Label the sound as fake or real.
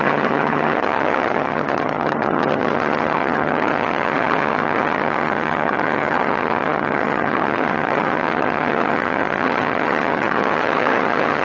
fake